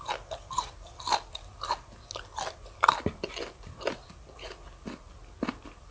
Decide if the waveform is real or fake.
real